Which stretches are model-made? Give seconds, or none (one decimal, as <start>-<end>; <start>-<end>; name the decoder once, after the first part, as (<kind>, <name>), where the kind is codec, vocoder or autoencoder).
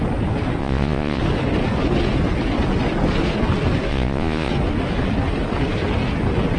0.6-1.2 (vocoder, Vocos); 3.9-4.5